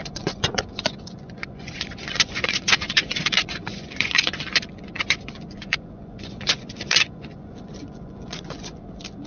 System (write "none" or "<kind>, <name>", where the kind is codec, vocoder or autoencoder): vocoder, Vocos